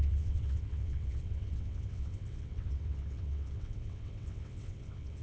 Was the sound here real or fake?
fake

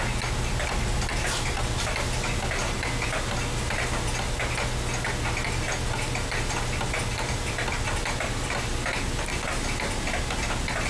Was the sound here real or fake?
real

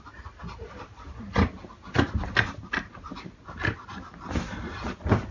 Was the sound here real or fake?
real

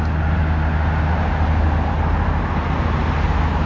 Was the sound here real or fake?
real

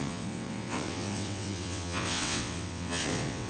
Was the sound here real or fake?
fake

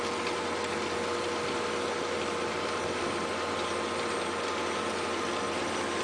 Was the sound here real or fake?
real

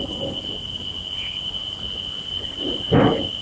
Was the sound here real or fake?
real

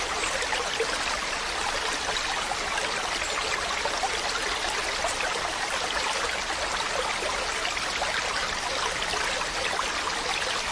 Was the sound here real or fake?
real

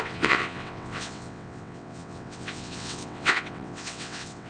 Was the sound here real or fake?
fake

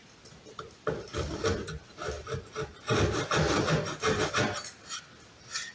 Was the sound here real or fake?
real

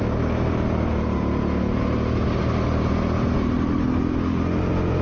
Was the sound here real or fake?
real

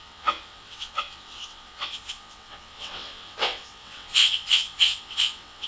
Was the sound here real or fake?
fake